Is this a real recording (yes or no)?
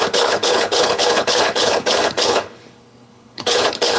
no